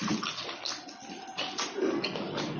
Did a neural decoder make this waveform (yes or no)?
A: no